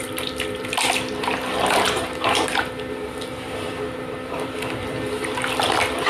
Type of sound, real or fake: fake